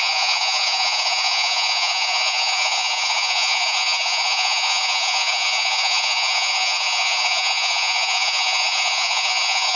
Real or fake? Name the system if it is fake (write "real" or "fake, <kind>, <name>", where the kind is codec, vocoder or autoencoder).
fake, vocoder, Vocos